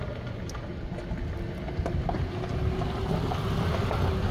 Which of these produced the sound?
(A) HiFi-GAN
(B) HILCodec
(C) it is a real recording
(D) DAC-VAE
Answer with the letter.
C